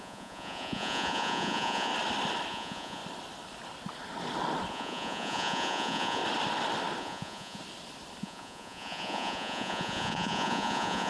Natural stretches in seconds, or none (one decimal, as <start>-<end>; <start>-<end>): 1.9-2.5; 3.0-4.7; 6.2-7.0; 7.6-8.2